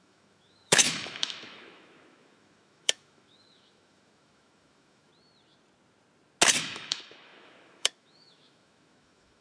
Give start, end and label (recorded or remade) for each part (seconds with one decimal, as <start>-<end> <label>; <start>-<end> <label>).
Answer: 0.0-5.1 remade; 5.1-6.6 recorded; 6.6-9.4 remade

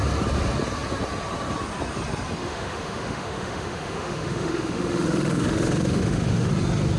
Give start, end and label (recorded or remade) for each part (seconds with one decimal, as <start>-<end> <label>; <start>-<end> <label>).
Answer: 0.0-2.4 recorded; 2.4-6.5 remade; 6.5-7.0 recorded

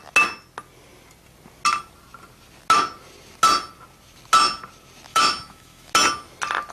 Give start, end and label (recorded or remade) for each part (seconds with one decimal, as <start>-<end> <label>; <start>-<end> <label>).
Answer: 0.0-5.1 recorded; 5.1-5.9 remade; 5.9-6.7 recorded